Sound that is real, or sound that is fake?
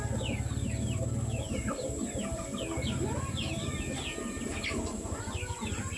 fake